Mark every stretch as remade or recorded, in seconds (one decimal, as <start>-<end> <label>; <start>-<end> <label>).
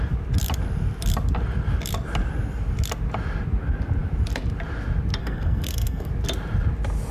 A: 0.0-5.2 recorded; 5.2-6.1 remade; 6.1-7.1 recorded